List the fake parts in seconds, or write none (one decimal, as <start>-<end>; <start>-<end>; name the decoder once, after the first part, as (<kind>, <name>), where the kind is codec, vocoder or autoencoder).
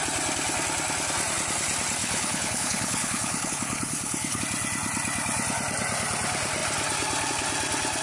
2.0-4.4 (codec, HILCodec)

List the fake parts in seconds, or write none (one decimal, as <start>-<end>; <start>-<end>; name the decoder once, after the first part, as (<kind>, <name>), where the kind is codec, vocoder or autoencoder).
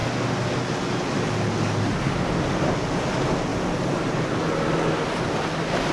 none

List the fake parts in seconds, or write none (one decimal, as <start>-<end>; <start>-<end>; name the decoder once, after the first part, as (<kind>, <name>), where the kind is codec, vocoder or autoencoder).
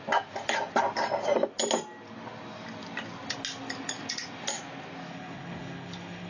5.1-6.3 (codec, HILCodec)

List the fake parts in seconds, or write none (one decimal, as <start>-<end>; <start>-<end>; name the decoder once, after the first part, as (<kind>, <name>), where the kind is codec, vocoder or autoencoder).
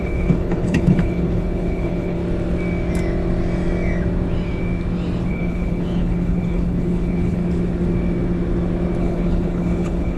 0.0-2.2 (codec, HILCodec); 5.3-7.4; 9.0-10.2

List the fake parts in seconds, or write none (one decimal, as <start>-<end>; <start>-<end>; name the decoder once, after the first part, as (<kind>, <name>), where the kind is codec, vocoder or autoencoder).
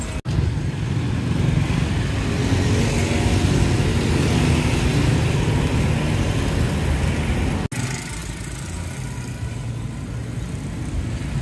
none